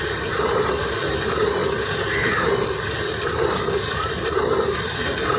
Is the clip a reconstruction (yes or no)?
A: no